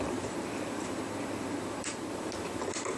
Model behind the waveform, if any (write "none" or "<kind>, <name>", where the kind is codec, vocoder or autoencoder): vocoder, BigVGAN v2